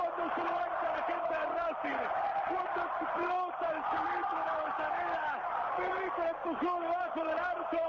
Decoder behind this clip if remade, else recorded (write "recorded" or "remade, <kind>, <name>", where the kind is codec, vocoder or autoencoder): recorded